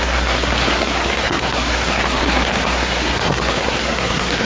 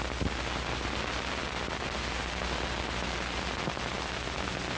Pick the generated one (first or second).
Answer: first